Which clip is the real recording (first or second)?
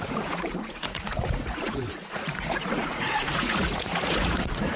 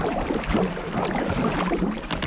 second